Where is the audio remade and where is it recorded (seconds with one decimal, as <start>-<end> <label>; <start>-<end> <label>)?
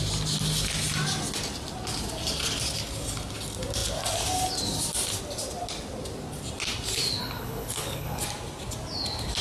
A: 0.0-7.2 recorded; 7.2-8.2 remade; 8.2-9.4 recorded